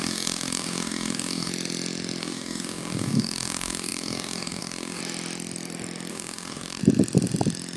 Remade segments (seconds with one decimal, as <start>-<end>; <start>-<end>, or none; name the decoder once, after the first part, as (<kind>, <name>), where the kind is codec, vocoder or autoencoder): 0.0-1.5 (codec, DAC); 2.2-5.0; 6.1-6.8